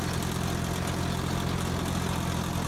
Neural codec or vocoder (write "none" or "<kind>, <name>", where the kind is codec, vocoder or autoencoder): none